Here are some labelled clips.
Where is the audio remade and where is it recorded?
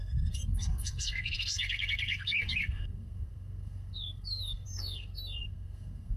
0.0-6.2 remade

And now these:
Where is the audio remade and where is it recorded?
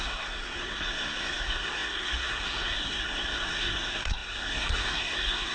0.0-5.5 remade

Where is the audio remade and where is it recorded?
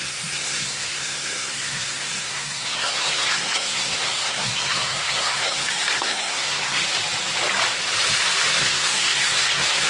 0.0-6.8 remade; 6.8-8.6 recorded; 8.6-9.9 remade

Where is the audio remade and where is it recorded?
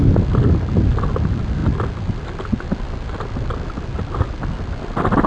0.0-5.3 recorded